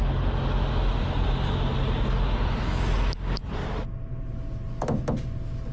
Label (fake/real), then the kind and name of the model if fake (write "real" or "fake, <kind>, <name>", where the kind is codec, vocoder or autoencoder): real